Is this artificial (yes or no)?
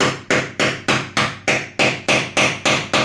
no